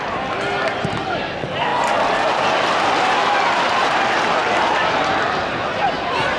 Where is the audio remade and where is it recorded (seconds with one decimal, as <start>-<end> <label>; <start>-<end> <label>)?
0.0-6.4 recorded